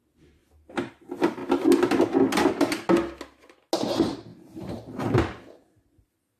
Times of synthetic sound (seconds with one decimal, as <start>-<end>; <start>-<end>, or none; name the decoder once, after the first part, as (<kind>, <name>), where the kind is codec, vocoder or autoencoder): 0.4-0.9 (vocoder, BigVGAN v2); 4.3-5.2